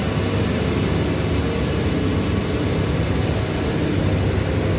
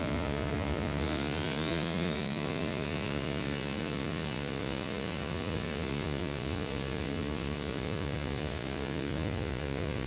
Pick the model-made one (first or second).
second